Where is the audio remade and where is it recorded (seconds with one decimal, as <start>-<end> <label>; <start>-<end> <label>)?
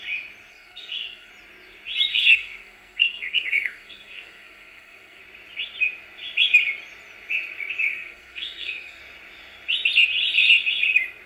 0.0-0.5 recorded; 0.5-1.3 remade; 1.3-2.1 recorded; 2.1-5.2 remade; 5.2-7.9 recorded; 7.9-9.0 remade; 9.0-11.3 recorded